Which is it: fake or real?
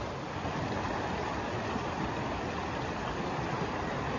real